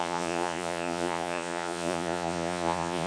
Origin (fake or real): fake